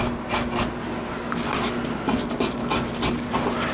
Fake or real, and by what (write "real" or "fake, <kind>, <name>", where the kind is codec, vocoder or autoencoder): real